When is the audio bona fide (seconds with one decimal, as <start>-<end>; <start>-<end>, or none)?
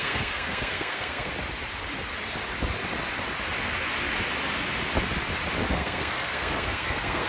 1.3-5.7